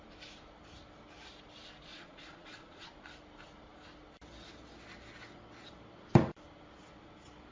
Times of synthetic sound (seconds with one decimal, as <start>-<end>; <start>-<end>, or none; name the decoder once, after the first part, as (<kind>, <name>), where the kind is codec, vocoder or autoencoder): 1.9-2.9 (vocoder, Vocos)